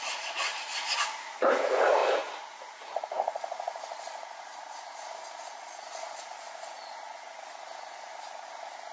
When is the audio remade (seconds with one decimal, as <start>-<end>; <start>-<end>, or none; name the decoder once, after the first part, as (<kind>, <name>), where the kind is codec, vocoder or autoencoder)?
0.0-0.7 (vocoder, Vocos); 1.2-8.9